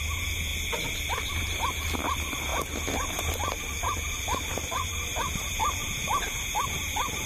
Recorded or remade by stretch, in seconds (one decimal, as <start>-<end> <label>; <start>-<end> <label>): 0.0-0.5 remade; 0.5-1.1 recorded; 1.1-7.3 remade